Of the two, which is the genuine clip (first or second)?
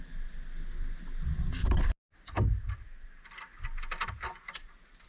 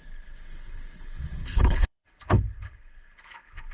first